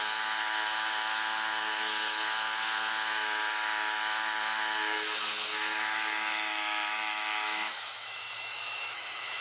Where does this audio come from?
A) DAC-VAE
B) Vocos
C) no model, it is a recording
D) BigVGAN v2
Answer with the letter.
A